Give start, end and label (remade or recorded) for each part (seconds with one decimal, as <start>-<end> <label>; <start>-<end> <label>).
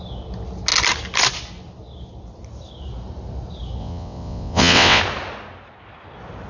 0.0-3.8 recorded; 3.8-5.0 remade; 5.0-6.5 recorded